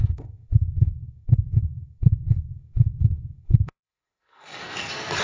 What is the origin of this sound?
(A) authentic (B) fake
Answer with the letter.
B